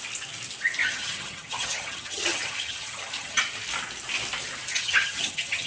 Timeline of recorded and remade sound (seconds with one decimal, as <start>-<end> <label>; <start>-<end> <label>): 0.0-0.8 recorded; 0.8-3.4 remade; 3.4-4.7 recorded; 4.7-5.7 remade